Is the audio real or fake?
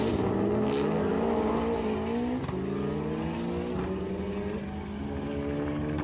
real